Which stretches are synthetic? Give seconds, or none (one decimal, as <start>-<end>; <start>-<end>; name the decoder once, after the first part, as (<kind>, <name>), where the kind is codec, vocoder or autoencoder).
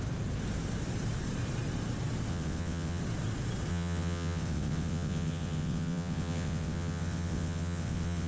2.3-3.0 (vocoder, WaveNeXt); 3.7-8.3